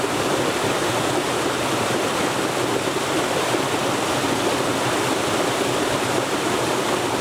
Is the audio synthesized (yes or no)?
no